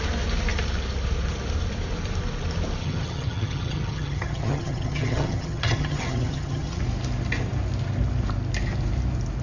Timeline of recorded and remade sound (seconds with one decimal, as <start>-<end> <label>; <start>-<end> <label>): 0.0-2.8 recorded; 2.8-6.8 remade; 6.8-9.4 recorded